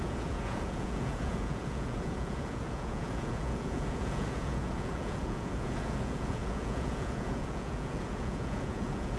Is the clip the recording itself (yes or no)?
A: no